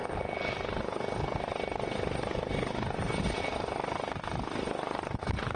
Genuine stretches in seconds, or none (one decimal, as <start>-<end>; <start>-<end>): 0.0-5.6